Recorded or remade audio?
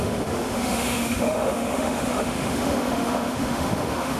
remade